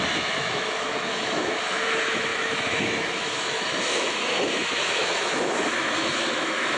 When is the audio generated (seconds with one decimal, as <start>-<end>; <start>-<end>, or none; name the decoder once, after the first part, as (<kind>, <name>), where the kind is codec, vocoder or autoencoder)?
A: 0.0-6.8 (autoencoder, DAC-VAE)